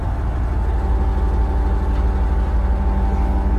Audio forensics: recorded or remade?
recorded